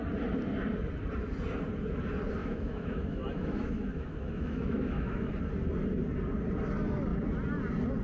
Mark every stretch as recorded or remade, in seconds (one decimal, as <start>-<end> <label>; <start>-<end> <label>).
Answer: 0.0-2.4 recorded; 2.4-5.3 remade; 5.3-8.0 recorded